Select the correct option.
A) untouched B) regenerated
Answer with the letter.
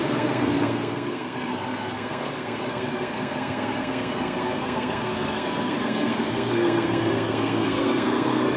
B